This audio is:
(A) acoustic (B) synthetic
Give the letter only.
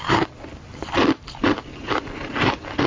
A